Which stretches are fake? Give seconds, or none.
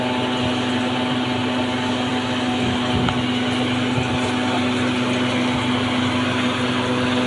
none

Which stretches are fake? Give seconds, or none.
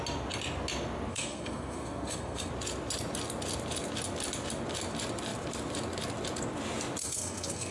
1.1-2.5 (codec, SNAC); 7.0-7.7